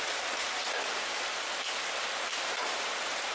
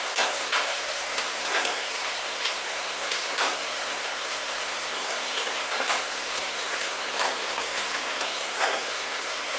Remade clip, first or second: second